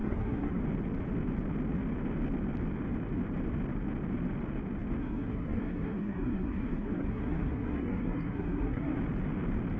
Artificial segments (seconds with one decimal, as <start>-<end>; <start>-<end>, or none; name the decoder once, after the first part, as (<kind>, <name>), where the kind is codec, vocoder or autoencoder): 0.0-0.6 (codec, SNAC); 5.0-9.0